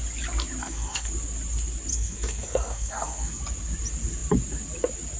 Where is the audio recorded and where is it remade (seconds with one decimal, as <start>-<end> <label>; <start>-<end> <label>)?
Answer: 0.0-0.6 recorded; 0.6-1.1 remade; 1.1-1.9 recorded; 1.9-3.4 remade; 3.4-5.2 recorded